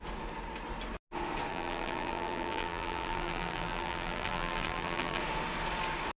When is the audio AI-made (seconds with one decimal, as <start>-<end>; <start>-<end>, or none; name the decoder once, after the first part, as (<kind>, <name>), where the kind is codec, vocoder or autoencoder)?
1.5-5.2 (vocoder, BigVGAN v2)